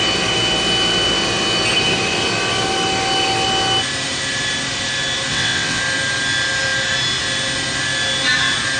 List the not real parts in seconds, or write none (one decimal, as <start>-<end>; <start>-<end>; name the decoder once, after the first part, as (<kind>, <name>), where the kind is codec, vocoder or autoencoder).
5.3-5.8 (vocoder, WaveNeXt)